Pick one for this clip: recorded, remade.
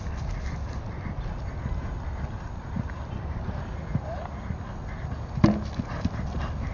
recorded